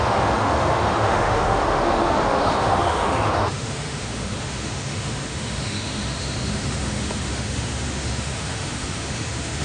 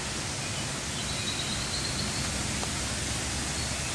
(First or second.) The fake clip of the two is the first